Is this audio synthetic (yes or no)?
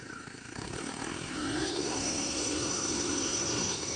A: yes